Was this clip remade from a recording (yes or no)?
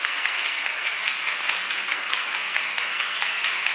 yes